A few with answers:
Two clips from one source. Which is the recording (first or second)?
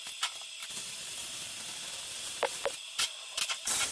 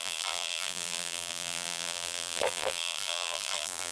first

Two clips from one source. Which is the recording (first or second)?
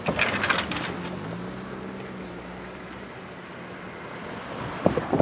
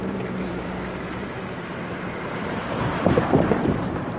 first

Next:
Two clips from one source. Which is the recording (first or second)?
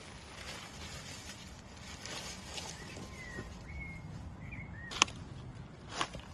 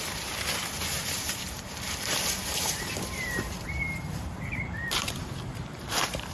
first